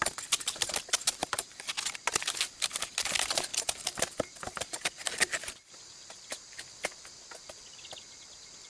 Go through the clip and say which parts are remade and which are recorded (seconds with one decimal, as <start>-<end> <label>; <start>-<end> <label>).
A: 0.0-1.2 recorded; 1.2-1.7 remade; 1.7-3.5 recorded; 3.5-5.2 remade; 5.2-8.7 recorded